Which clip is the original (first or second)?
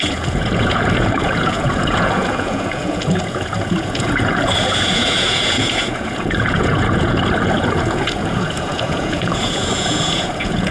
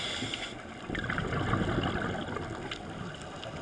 second